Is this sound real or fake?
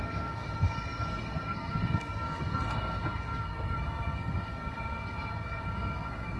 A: fake